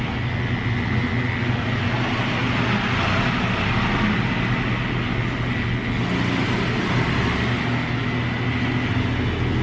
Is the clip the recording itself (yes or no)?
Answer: yes